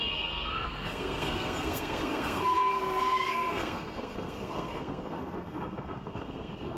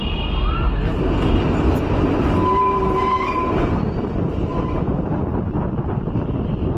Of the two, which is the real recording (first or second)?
second